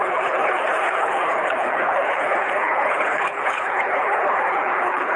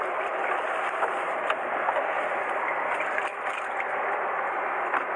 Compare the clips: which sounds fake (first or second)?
first